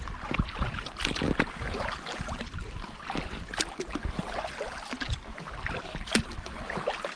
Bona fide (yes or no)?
yes